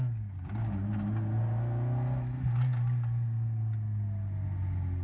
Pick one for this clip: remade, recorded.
recorded